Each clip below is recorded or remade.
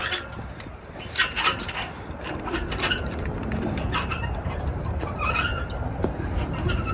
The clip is remade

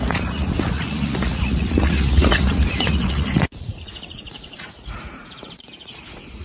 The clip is remade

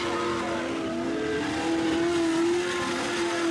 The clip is recorded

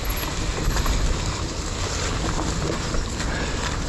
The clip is recorded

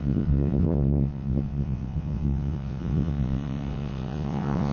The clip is remade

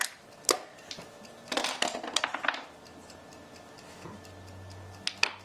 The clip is recorded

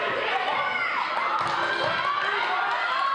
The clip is recorded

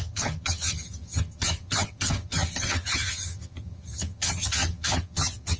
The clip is remade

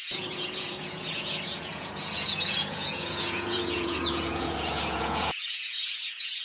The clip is remade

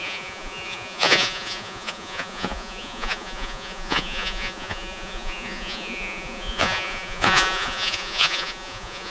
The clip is remade